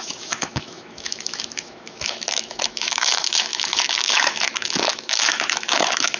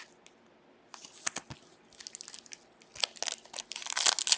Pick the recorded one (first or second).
second